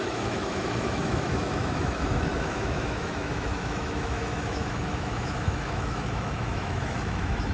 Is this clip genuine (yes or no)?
no